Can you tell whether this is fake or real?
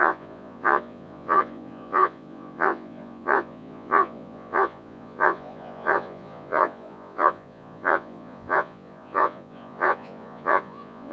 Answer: fake